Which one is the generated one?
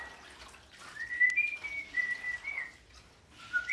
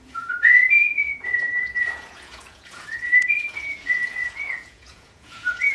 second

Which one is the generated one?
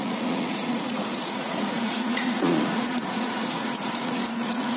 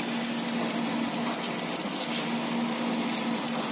first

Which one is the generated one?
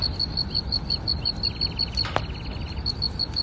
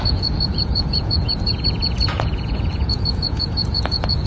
second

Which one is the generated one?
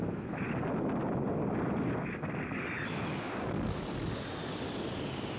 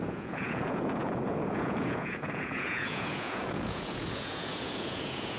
second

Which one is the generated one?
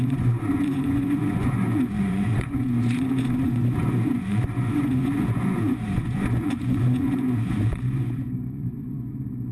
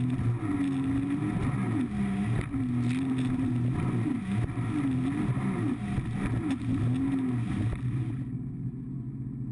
first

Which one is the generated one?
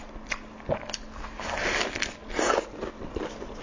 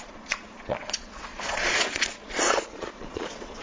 second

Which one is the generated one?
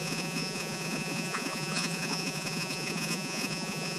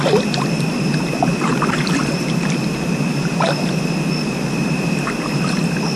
first